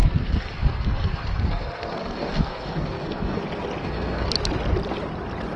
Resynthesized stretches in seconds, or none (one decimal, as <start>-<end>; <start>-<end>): 0.0-3.4; 3.8-4.3